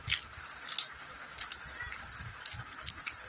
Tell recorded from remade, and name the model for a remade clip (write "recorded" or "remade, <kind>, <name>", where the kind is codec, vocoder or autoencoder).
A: recorded